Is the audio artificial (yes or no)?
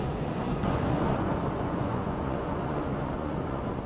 yes